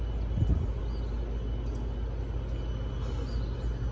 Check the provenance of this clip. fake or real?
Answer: real